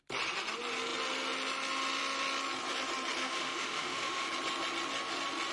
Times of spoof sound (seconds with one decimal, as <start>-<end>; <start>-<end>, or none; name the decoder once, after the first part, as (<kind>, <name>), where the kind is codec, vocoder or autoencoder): 3.2-4.3 (autoencoder, DAC-VAE)